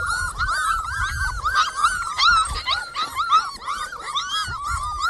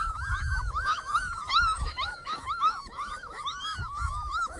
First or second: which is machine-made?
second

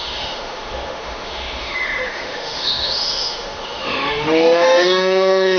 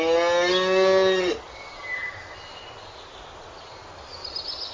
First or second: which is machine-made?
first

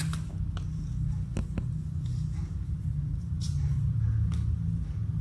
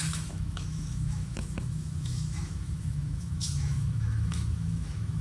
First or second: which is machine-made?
second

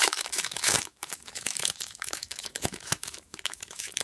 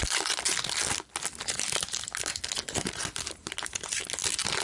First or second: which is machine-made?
first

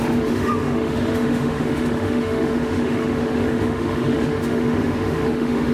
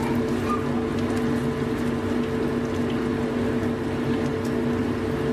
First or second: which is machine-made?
first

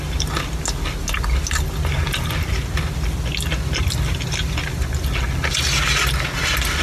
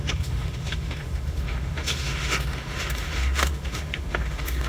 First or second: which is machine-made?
second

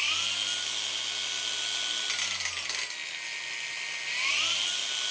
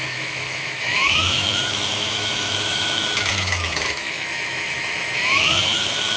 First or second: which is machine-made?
second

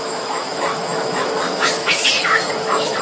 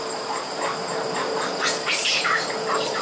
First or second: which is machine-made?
first